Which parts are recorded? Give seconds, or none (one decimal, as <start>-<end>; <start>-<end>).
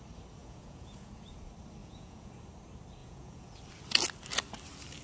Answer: 0.0-0.4; 1.4-1.8; 2.4-3.0; 3.6-5.0